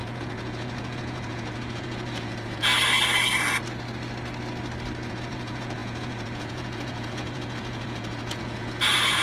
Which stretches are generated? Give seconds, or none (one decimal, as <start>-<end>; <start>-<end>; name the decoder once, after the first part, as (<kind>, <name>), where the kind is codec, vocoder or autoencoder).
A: 0.0-2.7 (vocoder, Vocos); 5.1-9.2